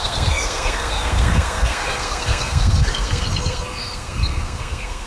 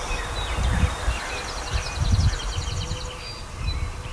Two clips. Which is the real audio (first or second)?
second